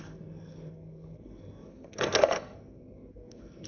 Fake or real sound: fake